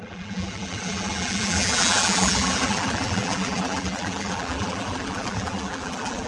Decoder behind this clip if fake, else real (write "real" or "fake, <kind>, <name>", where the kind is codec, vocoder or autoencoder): fake, vocoder, BigVGAN v2